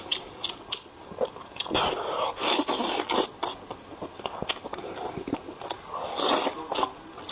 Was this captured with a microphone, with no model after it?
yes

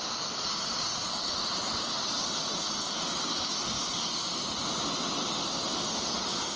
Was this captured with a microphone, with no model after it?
yes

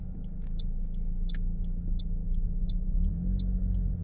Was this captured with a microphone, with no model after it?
yes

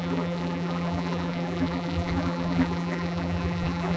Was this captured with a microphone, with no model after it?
no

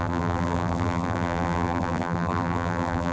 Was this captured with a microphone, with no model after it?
no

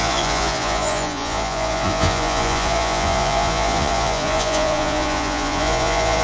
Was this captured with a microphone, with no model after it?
no